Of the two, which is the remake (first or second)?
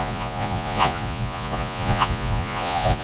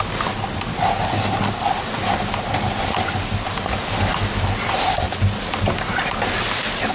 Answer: first